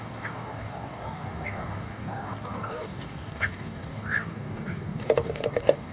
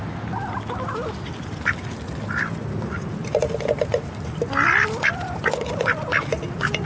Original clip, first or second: second